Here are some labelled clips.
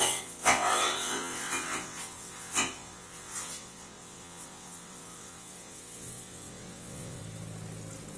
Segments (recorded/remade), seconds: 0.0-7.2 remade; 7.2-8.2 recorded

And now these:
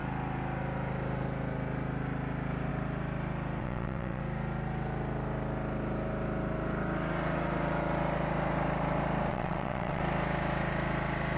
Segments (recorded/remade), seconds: 0.0-3.6 recorded; 3.6-4.2 remade; 4.2-9.3 recorded; 9.3-10.0 remade; 10.0-11.4 recorded

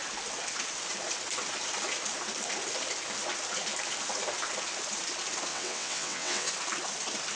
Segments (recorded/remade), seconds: 0.0-5.5 recorded; 5.5-6.5 remade; 6.5-7.4 recorded